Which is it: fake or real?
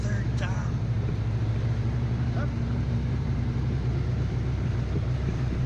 fake